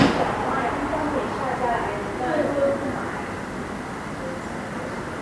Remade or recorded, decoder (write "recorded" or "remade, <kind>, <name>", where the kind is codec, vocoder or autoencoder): recorded